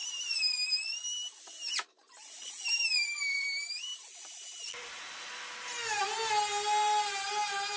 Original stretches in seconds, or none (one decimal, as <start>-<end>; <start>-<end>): 0.0-1.4; 3.9-6.3